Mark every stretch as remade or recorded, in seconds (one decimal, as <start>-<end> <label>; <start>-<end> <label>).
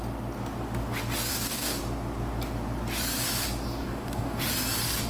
0.0-1.3 recorded; 1.3-1.8 remade; 1.8-3.8 recorded; 3.8-4.4 remade; 4.4-5.1 recorded